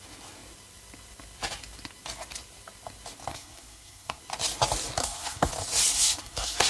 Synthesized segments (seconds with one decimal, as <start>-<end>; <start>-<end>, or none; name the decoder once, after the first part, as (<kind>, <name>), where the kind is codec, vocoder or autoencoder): 3.3-4.2 (codec, SNAC); 5.0-5.5; 5.9-6.7

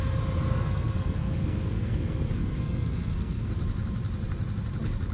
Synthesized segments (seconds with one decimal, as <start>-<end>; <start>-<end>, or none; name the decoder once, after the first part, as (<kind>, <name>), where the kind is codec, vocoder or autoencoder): 0.5-3.5 (codec, SNAC)

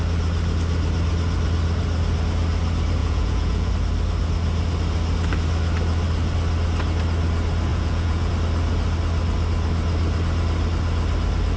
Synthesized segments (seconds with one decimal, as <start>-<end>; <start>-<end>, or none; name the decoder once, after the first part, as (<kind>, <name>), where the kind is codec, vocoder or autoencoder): 3.0-3.7 (vocoder, Vocos); 7.7-8.3

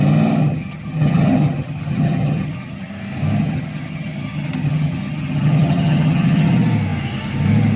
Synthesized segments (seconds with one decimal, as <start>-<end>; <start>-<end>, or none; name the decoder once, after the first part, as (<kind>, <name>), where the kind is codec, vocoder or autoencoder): 0.4-2.9 (vocoder, HiFi-GAN); 3.4-6.5

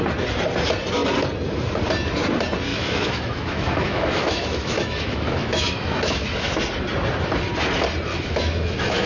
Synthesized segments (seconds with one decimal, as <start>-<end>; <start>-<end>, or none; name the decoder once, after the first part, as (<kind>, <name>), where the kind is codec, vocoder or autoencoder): 2.7-6.5 (autoencoder, DAC-VAE); 8.1-9.1

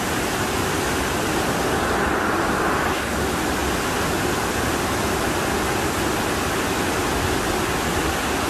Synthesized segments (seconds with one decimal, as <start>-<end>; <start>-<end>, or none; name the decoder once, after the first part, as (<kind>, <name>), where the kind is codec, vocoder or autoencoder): none

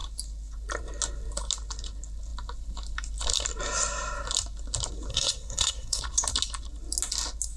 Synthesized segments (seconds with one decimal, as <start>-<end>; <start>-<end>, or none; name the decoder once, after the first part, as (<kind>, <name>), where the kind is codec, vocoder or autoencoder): 5.1-6.0 (codec, SNAC)